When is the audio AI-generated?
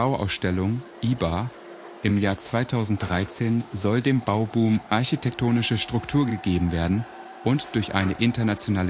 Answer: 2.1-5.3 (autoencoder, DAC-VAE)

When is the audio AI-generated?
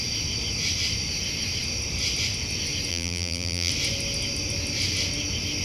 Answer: 2.9-3.7 (vocoder, BigVGAN v2)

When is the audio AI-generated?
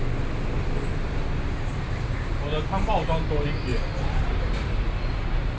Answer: none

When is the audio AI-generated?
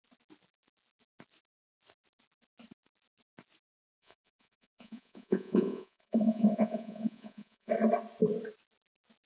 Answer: 3.7-7.7 (vocoder, Vocos)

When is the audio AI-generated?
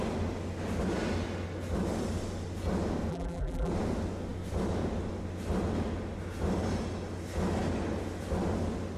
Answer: 3.1-3.7 (vocoder, BigVGAN v2)